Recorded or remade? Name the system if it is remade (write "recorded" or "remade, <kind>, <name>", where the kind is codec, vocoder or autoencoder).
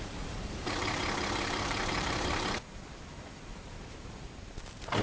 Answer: remade, vocoder, BigVGAN v2